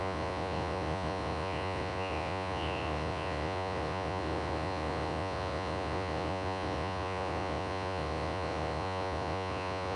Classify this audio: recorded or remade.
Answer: remade